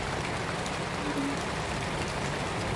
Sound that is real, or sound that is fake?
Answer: real